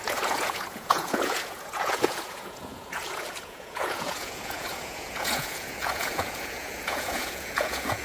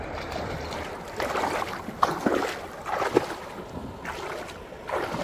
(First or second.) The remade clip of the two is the first